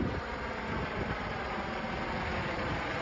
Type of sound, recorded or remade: recorded